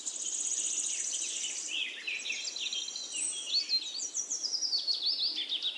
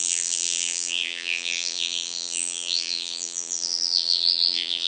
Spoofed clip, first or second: second